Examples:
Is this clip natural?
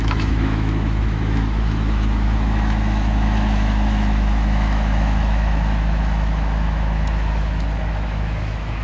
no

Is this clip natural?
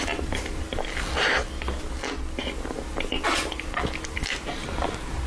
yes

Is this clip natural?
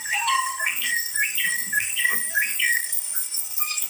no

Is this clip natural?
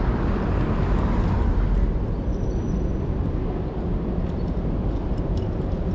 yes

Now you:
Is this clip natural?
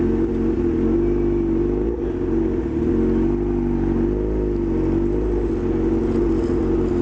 yes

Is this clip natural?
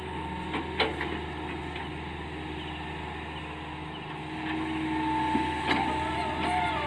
yes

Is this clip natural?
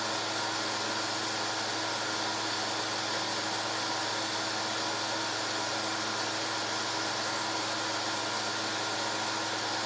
yes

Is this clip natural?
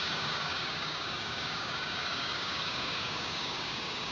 no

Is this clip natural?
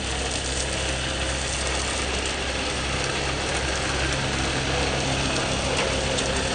yes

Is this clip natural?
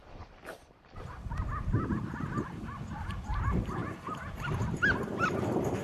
no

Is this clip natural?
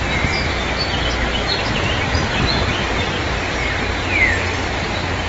yes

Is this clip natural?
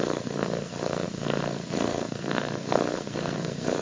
no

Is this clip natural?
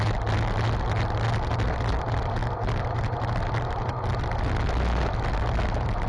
yes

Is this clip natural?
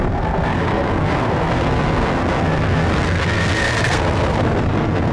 no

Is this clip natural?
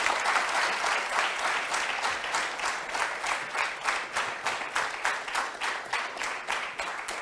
yes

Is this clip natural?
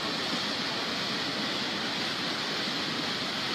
yes